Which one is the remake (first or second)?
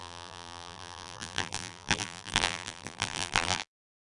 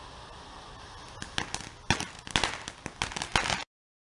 first